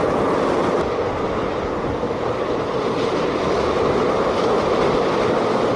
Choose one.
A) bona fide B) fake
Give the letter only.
A